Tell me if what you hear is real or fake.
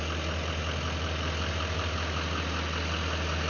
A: real